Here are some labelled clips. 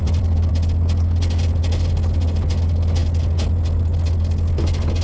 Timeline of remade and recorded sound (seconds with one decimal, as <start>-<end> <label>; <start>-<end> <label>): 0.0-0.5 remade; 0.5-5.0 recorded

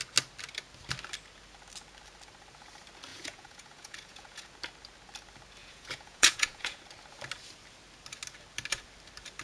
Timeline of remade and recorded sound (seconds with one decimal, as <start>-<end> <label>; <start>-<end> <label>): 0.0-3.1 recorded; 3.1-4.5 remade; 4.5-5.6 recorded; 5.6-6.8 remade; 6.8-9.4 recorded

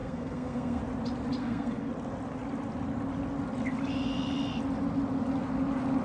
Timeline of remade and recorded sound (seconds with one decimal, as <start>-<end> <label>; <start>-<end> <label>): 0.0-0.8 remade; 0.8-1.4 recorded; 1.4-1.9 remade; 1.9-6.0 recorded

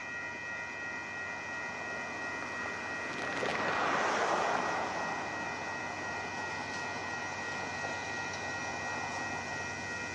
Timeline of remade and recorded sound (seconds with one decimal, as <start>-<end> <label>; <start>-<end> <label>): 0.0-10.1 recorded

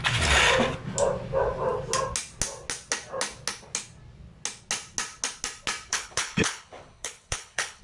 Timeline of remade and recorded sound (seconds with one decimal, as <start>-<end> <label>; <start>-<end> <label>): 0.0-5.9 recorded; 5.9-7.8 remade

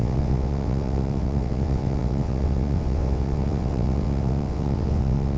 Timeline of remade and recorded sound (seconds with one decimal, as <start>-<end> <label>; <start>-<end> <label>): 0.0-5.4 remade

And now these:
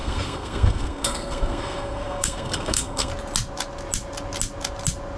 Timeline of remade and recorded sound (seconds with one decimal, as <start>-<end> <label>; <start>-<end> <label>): 0.0-3.1 remade; 3.1-5.2 recorded

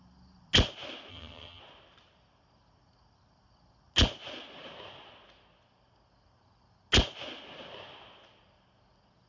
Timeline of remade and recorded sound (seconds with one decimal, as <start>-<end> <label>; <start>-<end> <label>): 0.0-1.1 recorded; 1.1-1.6 remade; 1.6-9.3 recorded